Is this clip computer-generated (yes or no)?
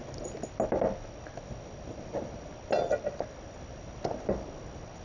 no